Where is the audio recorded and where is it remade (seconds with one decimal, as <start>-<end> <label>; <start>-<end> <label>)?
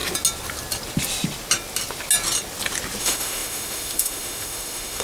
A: 0.0-3.0 recorded; 3.0-5.0 remade